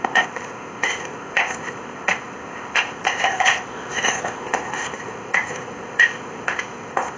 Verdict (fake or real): fake